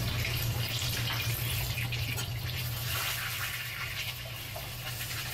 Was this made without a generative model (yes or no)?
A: yes